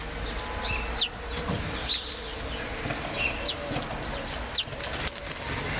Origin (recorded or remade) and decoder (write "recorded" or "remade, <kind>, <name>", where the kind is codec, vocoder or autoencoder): recorded